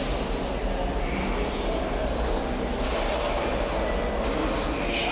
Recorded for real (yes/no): yes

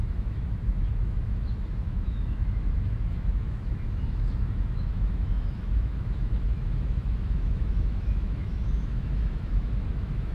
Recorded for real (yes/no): no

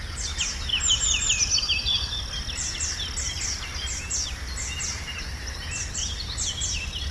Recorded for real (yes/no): yes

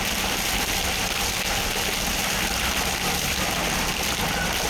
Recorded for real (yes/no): yes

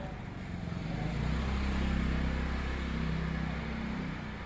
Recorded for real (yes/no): yes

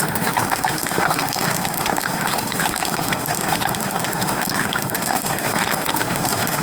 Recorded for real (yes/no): no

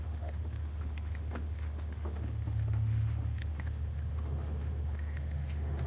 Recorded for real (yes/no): no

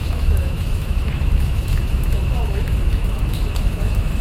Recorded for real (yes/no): no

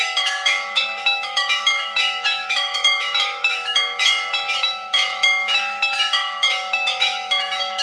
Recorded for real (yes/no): no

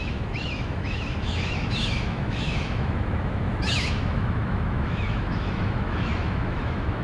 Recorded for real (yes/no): no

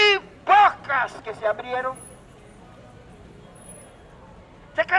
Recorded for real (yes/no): yes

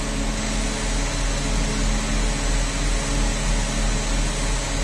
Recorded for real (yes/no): yes